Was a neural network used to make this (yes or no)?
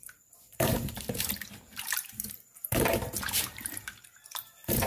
yes